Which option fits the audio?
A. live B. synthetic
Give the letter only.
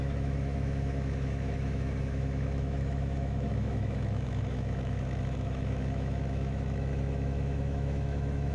B